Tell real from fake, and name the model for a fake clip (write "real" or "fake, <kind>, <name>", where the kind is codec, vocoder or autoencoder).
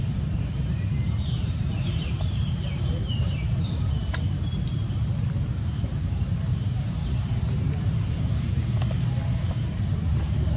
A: fake, vocoder, BigVGAN v2